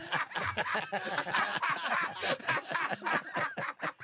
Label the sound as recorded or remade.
recorded